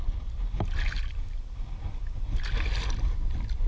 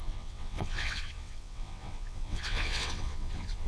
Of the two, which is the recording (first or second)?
first